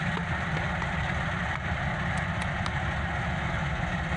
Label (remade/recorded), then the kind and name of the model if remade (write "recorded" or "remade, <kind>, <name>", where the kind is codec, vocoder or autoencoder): recorded